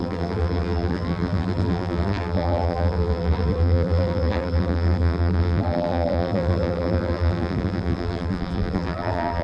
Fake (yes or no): yes